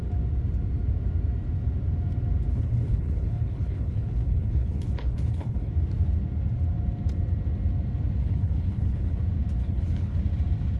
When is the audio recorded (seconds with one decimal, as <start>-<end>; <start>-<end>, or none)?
0.0-2.5; 5.7-8.2; 9.2-9.6; 10.2-10.8